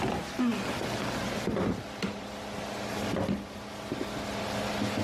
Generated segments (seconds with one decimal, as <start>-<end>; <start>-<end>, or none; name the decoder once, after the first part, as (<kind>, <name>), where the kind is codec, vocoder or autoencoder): none